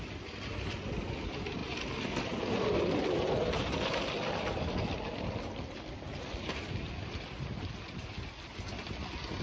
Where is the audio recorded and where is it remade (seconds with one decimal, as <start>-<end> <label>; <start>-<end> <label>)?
0.0-9.4 recorded